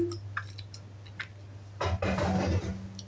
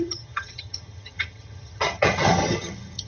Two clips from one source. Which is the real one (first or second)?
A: first